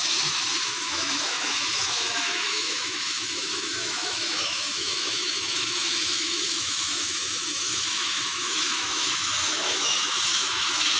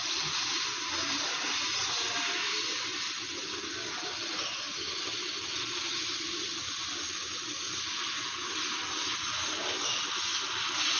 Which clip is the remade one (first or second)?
first